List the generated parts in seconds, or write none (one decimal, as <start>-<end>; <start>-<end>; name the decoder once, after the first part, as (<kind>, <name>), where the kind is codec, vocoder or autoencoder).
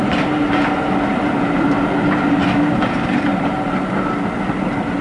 none